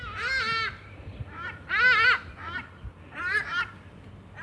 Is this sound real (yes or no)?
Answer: yes